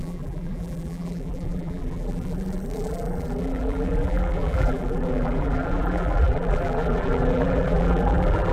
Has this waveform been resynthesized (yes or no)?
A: yes